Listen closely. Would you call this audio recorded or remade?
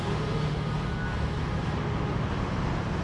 recorded